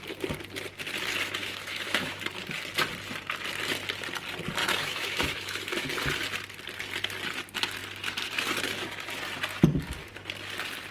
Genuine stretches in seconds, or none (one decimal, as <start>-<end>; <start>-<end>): 0.0-1.4; 2.2-4.6; 5.7-10.9